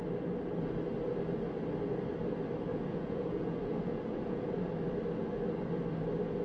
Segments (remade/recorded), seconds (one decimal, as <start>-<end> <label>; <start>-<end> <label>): 0.0-2.7 recorded; 2.7-4.5 remade; 4.5-6.4 recorded